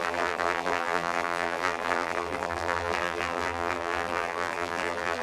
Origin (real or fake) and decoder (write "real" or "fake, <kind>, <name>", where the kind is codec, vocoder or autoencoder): fake, vocoder, BigVGAN v2